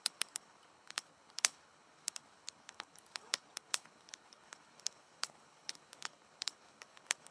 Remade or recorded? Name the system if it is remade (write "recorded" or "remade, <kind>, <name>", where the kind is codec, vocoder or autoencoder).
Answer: remade, codec, HILCodec